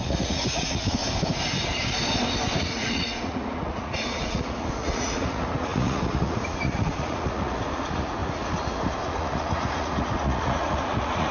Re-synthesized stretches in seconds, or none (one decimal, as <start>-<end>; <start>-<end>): 0.0-1.0; 2.6-11.3